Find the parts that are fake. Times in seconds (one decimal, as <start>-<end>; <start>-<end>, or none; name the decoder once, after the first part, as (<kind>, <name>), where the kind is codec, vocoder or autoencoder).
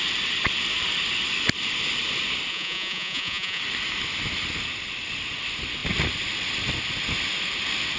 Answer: 2.5-3.6 (vocoder, Vocos)